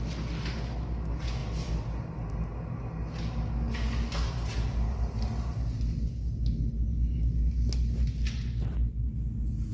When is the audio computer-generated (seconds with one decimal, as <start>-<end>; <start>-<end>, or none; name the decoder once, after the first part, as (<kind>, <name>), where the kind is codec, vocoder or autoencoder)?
none